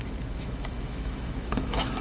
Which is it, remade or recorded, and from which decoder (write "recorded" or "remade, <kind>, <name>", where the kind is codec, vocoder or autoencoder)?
remade, autoencoder, DAC-VAE